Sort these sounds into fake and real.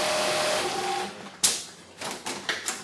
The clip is real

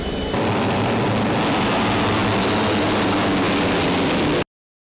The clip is real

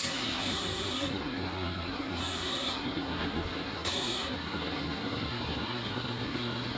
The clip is fake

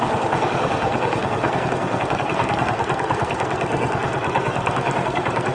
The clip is fake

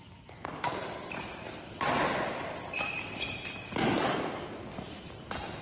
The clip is real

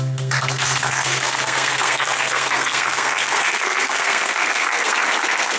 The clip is fake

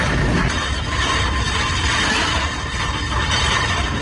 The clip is real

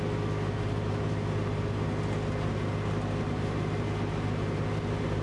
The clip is real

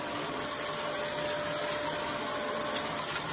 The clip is real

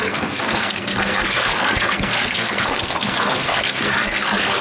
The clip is fake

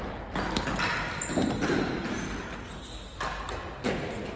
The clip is real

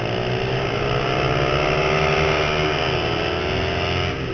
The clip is real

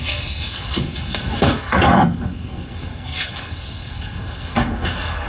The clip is fake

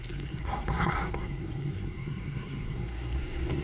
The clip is fake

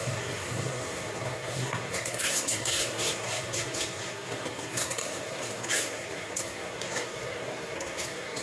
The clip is fake